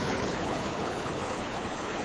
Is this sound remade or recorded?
remade